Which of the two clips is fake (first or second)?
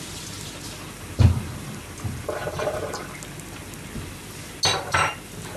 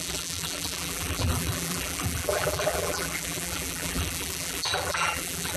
second